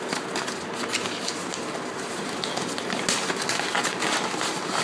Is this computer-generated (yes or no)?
no